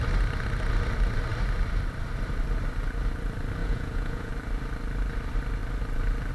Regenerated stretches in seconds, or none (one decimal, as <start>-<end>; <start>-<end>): 3.6-4.3